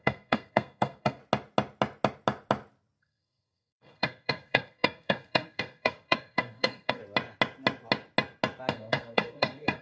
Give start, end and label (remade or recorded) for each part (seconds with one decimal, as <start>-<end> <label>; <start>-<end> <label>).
0.0-1.2 remade; 1.2-3.0 recorded; 3.0-7.0 remade; 7.0-8.7 recorded; 8.7-9.8 remade